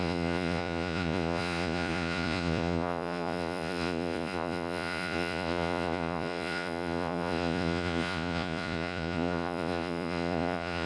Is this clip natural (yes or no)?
no